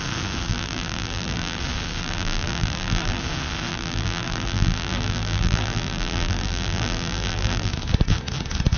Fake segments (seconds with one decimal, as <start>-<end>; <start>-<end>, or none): 0.5-1.6; 2.0-3.2; 3.7-7.7